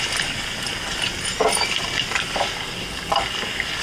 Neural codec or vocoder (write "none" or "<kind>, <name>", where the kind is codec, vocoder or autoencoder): none